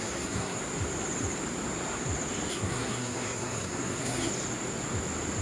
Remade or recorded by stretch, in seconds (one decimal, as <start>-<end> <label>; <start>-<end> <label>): 0.0-0.6 remade; 0.6-2.5 recorded; 2.5-4.3 remade; 4.3-5.4 recorded